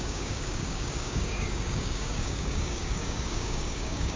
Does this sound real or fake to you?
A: fake